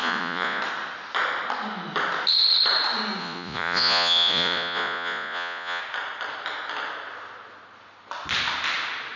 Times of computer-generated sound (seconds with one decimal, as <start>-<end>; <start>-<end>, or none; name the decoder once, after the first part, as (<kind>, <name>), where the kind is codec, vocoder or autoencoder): 0.0-0.6 (vocoder, Vocos); 3.2-5.8